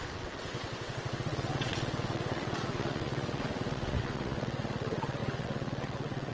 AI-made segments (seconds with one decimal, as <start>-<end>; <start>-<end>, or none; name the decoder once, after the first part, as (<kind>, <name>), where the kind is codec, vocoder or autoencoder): 0.0-6.3 (vocoder, WaveNeXt)